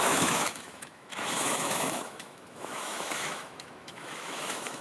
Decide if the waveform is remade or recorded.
remade